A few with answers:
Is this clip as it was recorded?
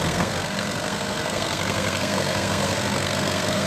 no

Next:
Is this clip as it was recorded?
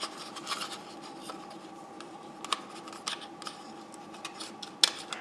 yes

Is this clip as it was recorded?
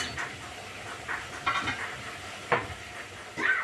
yes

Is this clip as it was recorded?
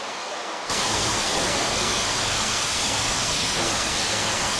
no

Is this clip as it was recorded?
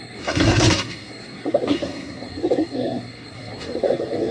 no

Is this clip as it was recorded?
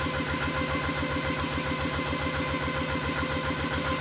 yes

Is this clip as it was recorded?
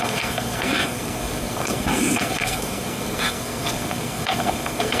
no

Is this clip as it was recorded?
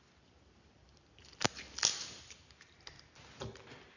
yes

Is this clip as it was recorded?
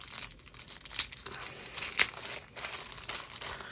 yes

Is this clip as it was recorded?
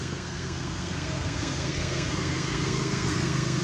no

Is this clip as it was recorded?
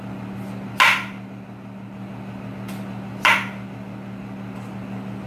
yes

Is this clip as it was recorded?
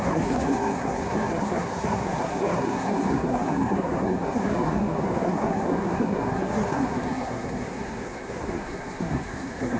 no